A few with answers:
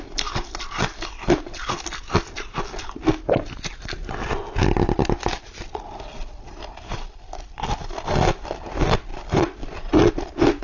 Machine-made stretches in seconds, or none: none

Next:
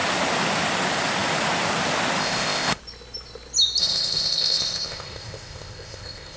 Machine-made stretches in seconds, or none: 2.2-2.8; 3.8-6.4